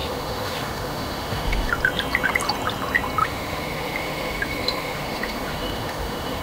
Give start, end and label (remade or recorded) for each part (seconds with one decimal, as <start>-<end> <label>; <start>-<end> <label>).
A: 0.0-1.7 remade; 1.7-3.2 recorded; 3.2-6.4 remade